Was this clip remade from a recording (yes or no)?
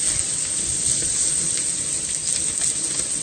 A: no